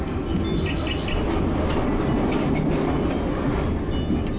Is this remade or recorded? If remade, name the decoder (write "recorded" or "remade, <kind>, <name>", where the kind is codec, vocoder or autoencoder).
recorded